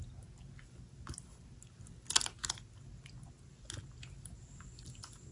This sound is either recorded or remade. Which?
recorded